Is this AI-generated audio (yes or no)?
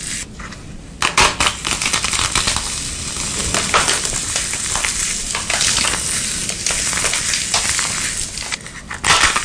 no